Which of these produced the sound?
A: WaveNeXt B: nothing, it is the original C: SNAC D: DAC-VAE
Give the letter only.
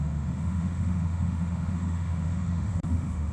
D